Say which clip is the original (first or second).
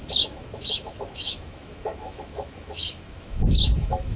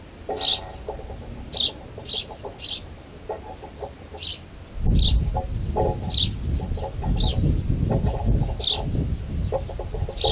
second